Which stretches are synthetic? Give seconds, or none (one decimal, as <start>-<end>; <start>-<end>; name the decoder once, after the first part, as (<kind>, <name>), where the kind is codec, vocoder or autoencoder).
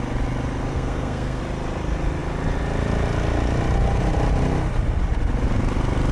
0.7-1.4 (codec, SNAC)